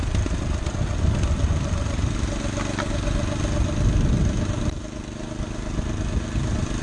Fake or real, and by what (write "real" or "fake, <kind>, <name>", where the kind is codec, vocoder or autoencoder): real